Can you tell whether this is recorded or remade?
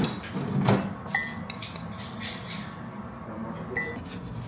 recorded